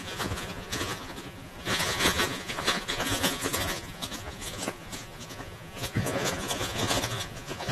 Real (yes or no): no